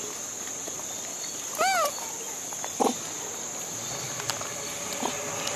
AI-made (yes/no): no